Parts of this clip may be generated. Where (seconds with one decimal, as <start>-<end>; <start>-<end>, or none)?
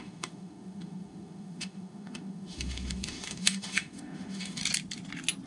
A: 0.0-4.6